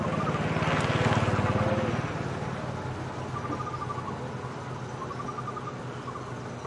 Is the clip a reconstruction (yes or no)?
no